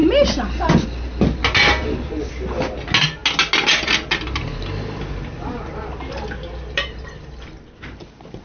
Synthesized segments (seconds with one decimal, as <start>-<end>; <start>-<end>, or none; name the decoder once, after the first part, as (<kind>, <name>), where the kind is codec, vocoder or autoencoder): none